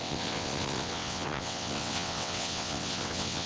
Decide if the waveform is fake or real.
fake